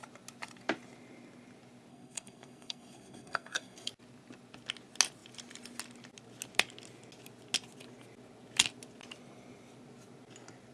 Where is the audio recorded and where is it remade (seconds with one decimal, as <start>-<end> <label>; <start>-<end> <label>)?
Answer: 0.0-1.9 recorded; 1.9-3.9 remade; 3.9-10.7 recorded